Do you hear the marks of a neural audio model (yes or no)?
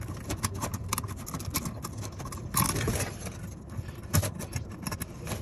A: no